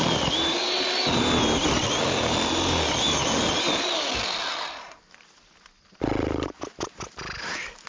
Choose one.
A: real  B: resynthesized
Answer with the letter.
A